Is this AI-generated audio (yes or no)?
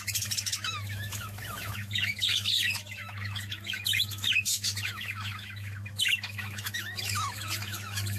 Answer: yes